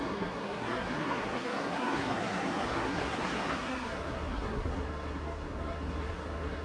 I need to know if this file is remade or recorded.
remade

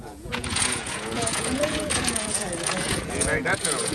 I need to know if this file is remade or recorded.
remade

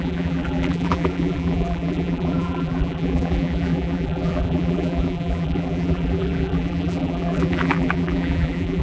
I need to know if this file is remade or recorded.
remade